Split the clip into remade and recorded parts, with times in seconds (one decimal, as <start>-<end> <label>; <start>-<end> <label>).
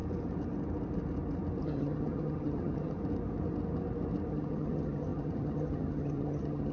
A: 0.0-1.6 recorded; 1.6-3.0 remade; 3.0-4.3 recorded; 4.3-6.7 remade